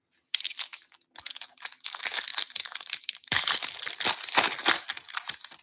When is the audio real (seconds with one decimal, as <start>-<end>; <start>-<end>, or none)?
0.0-2.3; 3.5-5.6

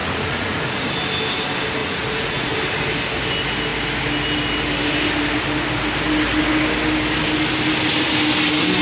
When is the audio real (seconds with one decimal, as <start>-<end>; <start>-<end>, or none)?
0.9-1.8; 2.5-8.8

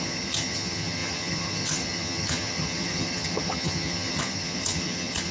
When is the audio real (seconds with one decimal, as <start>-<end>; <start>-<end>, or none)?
none

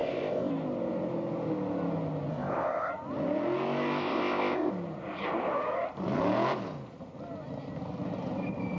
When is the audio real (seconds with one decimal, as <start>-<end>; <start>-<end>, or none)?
0.5-2.3; 2.9-4.0; 4.7-8.8

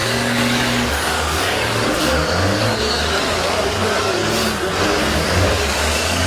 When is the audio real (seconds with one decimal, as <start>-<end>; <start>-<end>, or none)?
4.2-5.0